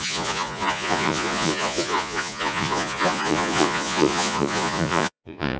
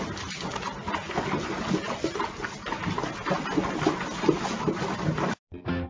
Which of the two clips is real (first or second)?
second